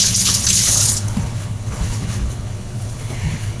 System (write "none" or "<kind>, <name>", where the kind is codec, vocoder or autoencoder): codec, HILCodec